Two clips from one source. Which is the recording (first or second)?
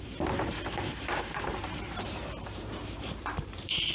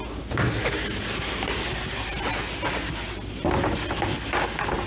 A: second